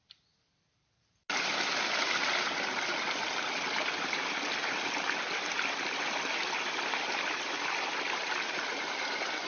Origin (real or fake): real